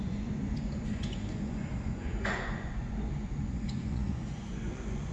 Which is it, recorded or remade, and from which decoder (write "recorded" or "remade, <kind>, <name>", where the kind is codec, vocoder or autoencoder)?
remade, vocoder, Vocos